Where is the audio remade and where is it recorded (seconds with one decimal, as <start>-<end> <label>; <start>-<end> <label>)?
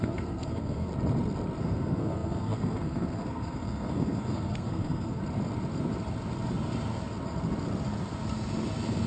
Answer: 0.0-0.9 remade; 0.9-1.6 recorded; 1.6-5.2 remade; 5.2-9.1 recorded